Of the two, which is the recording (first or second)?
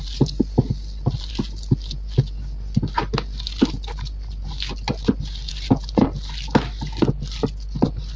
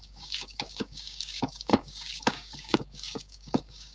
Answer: first